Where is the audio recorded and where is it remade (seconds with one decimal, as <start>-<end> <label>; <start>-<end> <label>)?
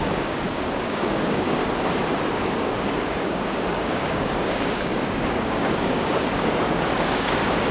0.0-1.6 remade; 1.6-2.3 recorded; 2.3-7.7 remade